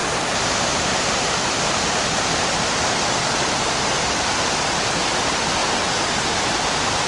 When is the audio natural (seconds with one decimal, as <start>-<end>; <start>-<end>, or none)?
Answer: 4.3-7.1

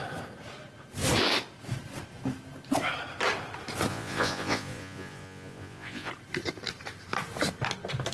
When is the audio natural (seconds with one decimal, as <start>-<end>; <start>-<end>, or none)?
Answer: 0.0-3.9; 6.1-8.1

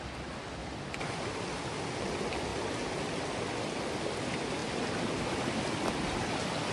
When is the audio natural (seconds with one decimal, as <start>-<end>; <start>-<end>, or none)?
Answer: 0.0-0.6; 1.7-4.6; 5.9-6.7

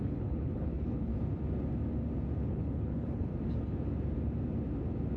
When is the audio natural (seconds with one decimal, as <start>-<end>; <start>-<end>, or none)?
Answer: 1.1-2.5; 3.3-5.2

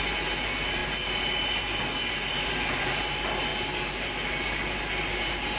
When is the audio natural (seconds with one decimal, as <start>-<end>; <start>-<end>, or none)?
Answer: 0.0-5.6